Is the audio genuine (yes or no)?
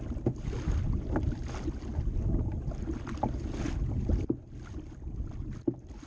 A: yes